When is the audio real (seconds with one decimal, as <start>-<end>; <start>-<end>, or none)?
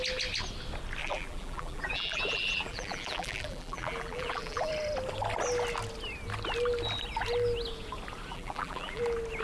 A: 0.0-1.0; 4.7-8.3; 9.0-9.4